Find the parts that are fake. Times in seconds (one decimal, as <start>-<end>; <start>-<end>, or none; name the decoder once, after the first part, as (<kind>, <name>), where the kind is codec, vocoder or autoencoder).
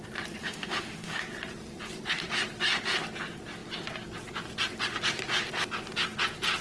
0.4-1.2 (autoencoder, DAC-VAE)